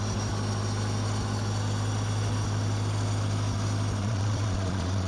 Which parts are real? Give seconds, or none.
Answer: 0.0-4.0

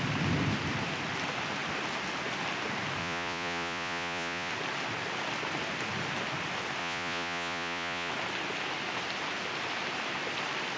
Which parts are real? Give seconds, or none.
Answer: 0.0-3.0; 4.5-6.8; 8.1-10.8

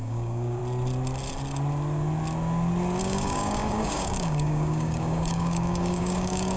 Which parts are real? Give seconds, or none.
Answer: 0.6-3.0

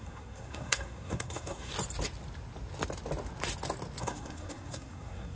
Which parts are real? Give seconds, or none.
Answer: 1.7-4.0

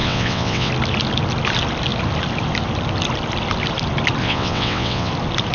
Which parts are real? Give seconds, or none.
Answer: 0.7-4.2; 5.1-5.5

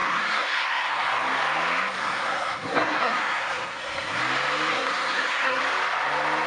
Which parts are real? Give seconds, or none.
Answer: 1.1-2.0; 4.2-4.7; 5.6-6.5